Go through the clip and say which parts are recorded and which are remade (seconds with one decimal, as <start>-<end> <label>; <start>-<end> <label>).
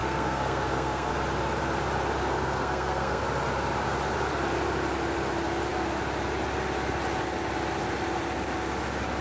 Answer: 0.0-1.1 remade; 1.1-2.2 recorded; 2.2-3.2 remade; 3.2-9.2 recorded